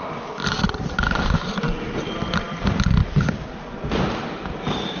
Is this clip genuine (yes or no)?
yes